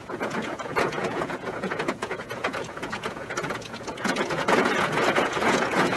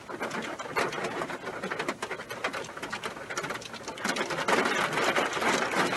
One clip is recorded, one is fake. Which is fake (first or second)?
first